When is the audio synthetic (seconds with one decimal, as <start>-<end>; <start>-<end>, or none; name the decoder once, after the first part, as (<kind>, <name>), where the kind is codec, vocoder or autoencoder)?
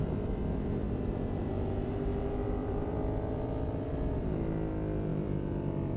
0.8-1.9 (vocoder, BigVGAN v2); 2.6-4.4; 5.1-6.0